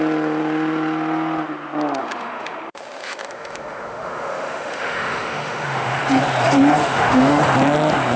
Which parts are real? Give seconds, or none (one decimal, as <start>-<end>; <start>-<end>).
0.0-2.0; 6.0-6.8; 7.4-8.2